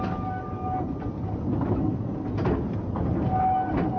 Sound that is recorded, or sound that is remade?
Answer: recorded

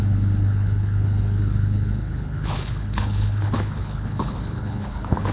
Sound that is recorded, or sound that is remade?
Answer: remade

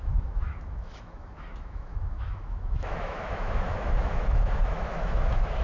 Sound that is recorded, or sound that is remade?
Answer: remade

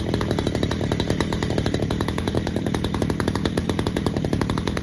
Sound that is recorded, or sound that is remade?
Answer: remade